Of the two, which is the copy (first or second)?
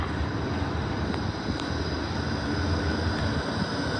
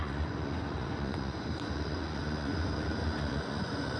second